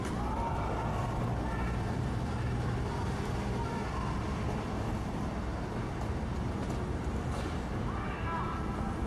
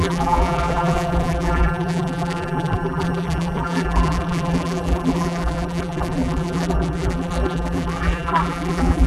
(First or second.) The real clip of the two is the first